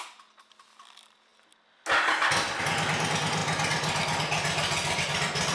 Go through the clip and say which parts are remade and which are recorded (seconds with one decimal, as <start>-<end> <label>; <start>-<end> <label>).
0.0-5.5 recorded